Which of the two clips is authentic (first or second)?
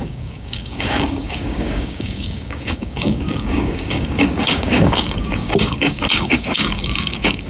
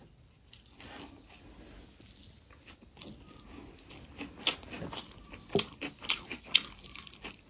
second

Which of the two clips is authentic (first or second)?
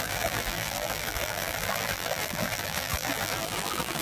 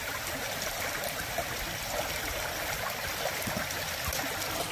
second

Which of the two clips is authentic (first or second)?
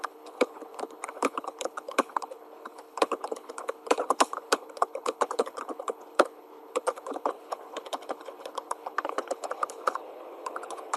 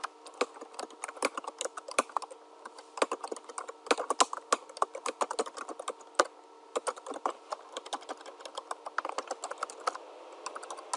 second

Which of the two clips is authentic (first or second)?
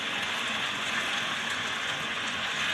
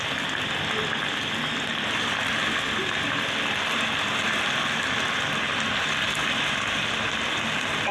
second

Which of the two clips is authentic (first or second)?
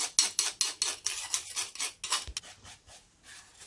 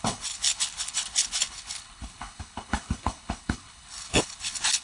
first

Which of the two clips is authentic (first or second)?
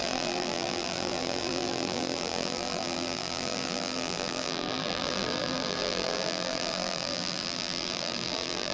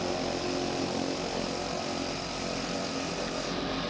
second